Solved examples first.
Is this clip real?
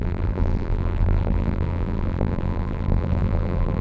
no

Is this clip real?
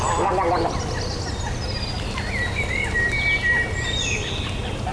yes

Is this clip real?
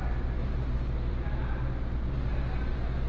yes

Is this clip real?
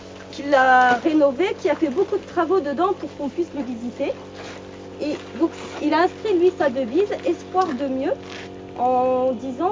yes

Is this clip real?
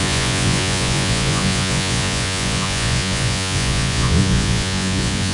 no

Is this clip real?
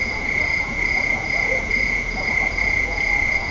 no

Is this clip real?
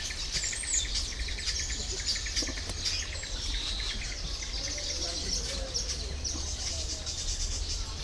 yes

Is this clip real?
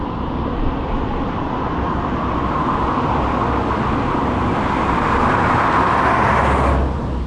yes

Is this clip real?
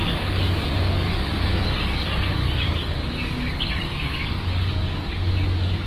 no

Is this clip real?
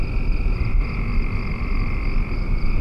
yes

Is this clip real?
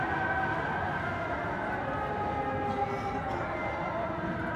yes